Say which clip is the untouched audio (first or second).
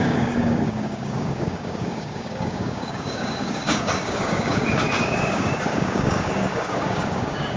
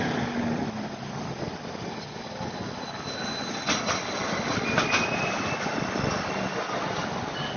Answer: second